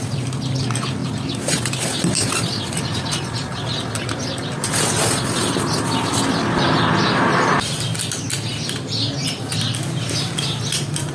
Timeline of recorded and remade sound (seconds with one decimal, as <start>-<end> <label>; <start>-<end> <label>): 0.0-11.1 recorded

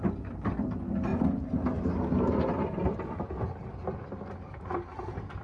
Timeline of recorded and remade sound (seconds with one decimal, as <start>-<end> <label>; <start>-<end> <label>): 0.0-5.4 recorded

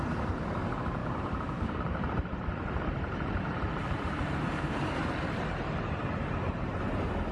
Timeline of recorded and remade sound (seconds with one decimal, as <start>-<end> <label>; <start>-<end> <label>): 0.0-1.0 recorded; 1.0-4.7 remade; 4.7-7.3 recorded

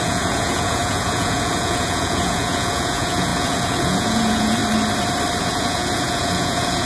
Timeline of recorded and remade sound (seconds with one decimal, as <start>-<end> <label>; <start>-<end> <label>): 0.0-4.6 remade; 4.6-5.4 recorded; 5.4-6.9 remade